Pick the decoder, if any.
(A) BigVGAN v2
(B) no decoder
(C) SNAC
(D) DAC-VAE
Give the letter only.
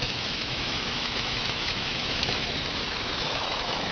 D